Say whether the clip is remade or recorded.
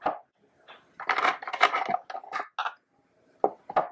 recorded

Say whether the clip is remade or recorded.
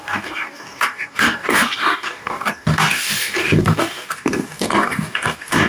remade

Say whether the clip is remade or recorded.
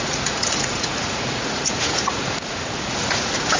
remade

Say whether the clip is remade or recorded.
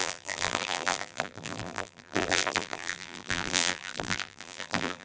remade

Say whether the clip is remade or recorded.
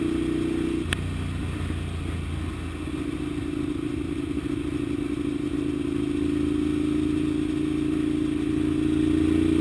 recorded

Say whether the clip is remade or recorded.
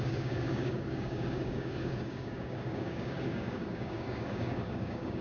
remade